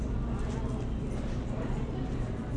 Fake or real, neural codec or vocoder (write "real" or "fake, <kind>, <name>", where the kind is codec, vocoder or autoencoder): real